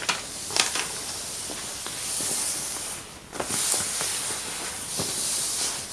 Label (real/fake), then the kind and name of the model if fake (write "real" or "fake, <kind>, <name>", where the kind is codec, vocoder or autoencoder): real